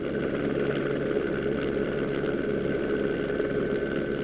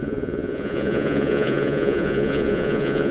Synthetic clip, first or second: second